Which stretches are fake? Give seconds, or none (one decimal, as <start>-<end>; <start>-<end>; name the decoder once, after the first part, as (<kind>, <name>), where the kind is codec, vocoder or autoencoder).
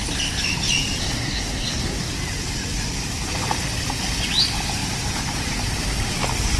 1.0-2.1 (codec, SNAC)